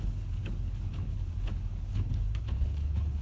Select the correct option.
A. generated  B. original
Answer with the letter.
A